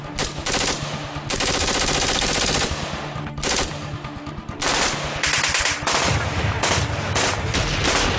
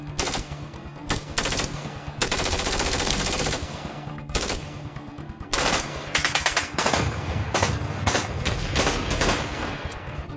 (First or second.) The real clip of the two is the first